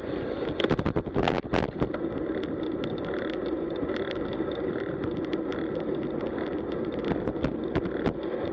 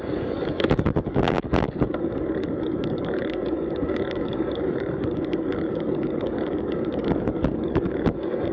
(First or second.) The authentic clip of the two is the first